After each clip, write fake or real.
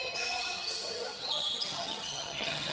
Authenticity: fake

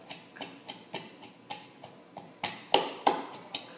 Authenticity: real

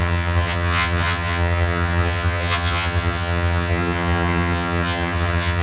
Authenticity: fake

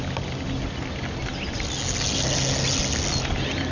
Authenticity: real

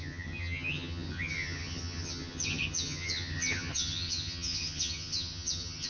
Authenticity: fake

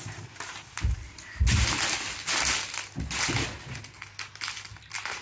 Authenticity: real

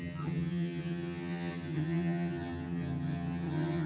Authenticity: fake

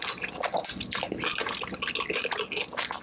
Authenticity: real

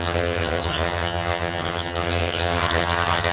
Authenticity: fake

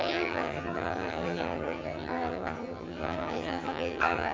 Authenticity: fake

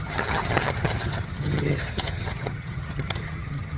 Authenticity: fake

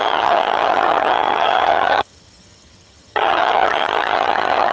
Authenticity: fake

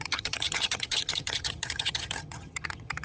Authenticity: fake